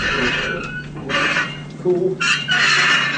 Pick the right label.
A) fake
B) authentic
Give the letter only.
A